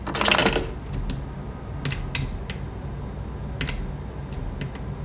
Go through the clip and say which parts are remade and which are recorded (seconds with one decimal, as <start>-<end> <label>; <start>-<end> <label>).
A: 0.0-5.0 recorded